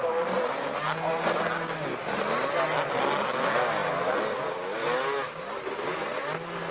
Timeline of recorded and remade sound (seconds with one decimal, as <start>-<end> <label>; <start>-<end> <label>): 0.0-6.7 recorded